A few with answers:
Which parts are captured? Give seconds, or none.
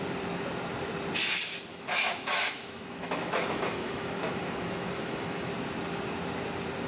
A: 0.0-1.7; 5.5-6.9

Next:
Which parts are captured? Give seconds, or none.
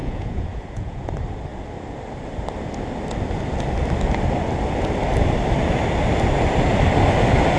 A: 1.1-7.6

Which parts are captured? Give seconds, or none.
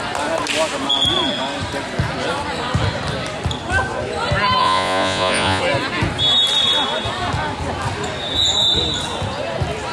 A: 0.0-4.6; 5.6-9.9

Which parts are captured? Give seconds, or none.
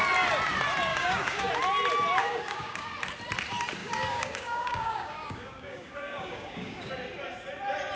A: 0.0-0.9; 1.5-2.2; 2.9-3.8; 6.9-8.0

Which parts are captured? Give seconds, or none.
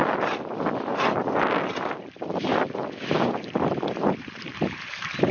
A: 0.0-1.7; 2.5-3.1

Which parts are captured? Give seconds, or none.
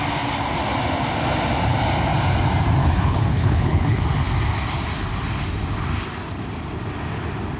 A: 0.0-2.8; 4.0-7.6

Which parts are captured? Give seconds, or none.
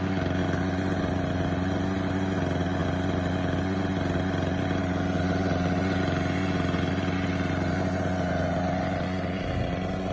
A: 0.0-10.1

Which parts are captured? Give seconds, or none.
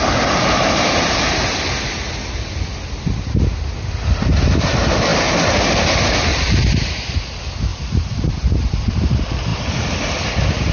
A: 0.0-6.3; 6.9-7.7; 8.5-10.7